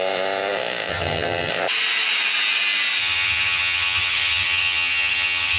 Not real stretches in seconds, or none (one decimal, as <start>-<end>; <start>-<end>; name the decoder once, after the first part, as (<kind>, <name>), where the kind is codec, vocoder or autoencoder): 0.9-1.5 (vocoder, HiFi-GAN); 3.0-5.6